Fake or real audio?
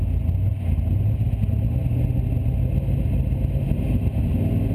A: real